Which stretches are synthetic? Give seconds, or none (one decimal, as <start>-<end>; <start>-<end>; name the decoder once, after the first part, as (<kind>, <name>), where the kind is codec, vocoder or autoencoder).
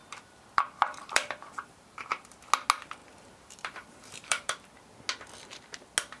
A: 0.0-2.0 (vocoder, BigVGAN v2); 3.0-5.0